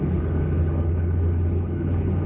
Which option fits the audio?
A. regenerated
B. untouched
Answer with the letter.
A